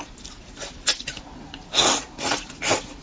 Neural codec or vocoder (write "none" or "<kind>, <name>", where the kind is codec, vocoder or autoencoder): vocoder, BigVGAN v2